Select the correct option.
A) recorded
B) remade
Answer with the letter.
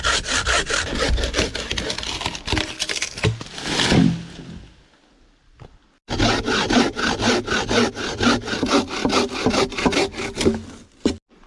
A